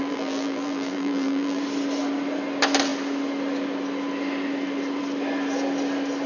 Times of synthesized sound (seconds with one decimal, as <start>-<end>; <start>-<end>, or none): 0.0-1.6